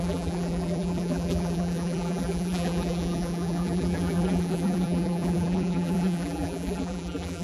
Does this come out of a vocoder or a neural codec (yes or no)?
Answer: yes